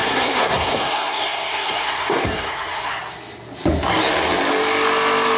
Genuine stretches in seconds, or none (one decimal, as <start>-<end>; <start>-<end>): 2.9-5.4